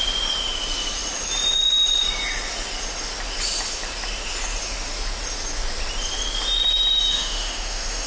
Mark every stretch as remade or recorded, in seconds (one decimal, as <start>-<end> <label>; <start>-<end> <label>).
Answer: 0.0-7.1 recorded; 7.1-8.1 remade